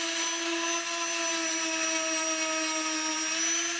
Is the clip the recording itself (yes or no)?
yes